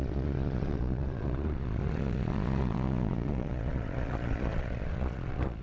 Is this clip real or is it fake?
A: fake